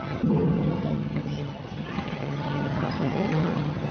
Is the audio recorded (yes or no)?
no